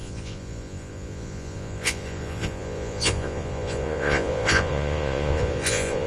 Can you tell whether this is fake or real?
fake